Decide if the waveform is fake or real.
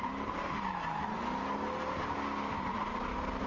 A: real